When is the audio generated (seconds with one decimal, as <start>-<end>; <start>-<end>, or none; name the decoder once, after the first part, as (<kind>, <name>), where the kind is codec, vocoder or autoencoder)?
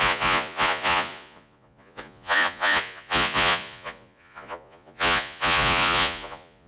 0.0-6.7 (vocoder, Vocos)